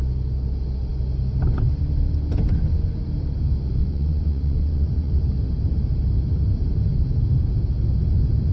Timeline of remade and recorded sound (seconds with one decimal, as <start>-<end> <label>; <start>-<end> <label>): 0.0-3.8 recorded; 3.8-5.1 remade; 5.1-8.5 recorded